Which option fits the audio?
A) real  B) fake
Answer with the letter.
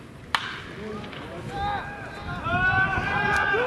A